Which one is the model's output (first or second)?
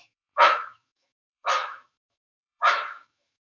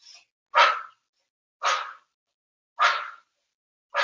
first